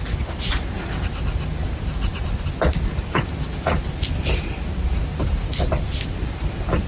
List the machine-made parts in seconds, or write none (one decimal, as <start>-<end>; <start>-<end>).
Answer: none